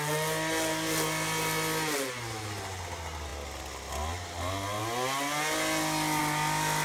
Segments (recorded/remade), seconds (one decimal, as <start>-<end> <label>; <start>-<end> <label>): 0.0-6.8 recorded